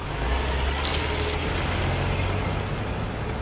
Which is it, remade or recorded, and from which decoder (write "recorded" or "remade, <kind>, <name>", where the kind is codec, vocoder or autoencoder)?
recorded